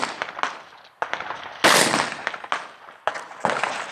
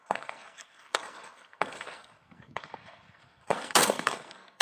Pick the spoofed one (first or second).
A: second